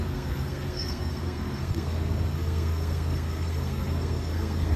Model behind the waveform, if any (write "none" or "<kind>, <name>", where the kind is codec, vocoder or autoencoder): codec, SNAC